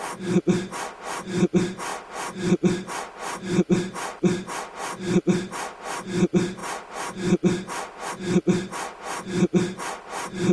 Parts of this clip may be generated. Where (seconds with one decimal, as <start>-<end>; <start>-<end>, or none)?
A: none